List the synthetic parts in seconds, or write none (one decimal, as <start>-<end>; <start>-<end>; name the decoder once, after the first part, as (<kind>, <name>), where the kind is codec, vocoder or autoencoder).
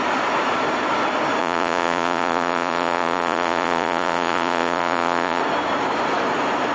1.4-5.4 (vocoder, Vocos)